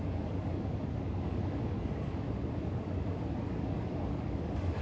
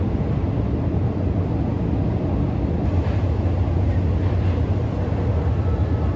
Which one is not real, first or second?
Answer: first